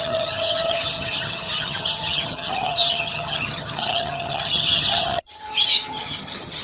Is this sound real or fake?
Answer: fake